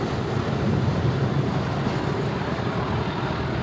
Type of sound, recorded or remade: recorded